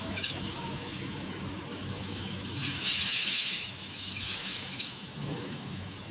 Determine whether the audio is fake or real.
fake